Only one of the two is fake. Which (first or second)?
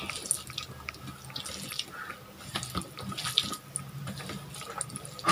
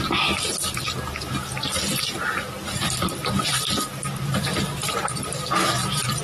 second